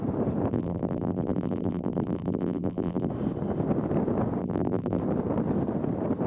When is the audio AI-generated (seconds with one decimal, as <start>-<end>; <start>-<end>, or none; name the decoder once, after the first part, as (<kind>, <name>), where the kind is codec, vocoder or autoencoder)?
0.5-3.1 (vocoder, BigVGAN v2); 4.4-5.0